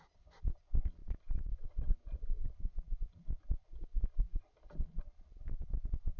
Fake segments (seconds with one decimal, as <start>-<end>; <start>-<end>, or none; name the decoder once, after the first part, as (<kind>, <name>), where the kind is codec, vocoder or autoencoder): none